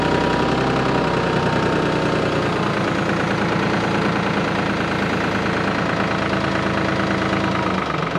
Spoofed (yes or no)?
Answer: no